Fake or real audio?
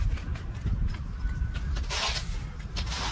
real